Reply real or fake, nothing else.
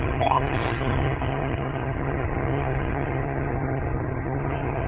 fake